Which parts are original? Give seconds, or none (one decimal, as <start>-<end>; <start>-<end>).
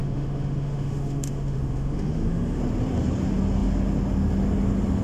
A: 2.6-5.0